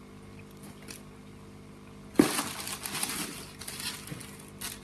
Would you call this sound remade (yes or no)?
no